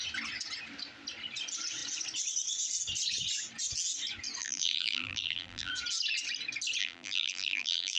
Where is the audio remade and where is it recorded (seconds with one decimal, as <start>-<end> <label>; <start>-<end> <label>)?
0.0-4.4 recorded; 4.4-5.7 remade; 5.7-6.8 recorded; 6.8-8.0 remade